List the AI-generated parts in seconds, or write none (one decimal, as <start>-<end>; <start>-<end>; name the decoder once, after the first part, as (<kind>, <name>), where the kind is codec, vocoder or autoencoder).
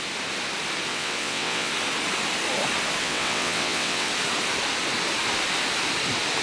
0.9-1.7 (vocoder, WaveNeXt); 3.0-4.1